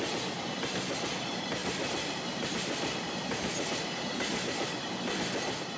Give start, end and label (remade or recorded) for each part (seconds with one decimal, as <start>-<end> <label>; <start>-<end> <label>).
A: 0.0-1.6 recorded; 1.6-5.0 remade; 5.0-5.8 recorded